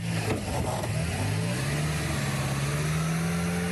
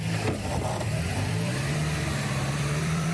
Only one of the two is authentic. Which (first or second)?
first